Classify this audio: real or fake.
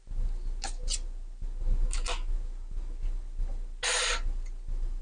real